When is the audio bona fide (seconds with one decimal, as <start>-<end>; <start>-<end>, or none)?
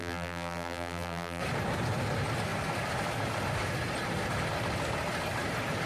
1.4-5.9